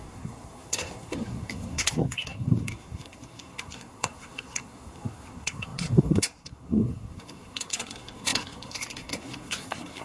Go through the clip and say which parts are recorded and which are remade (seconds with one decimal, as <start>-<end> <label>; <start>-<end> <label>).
0.0-10.0 remade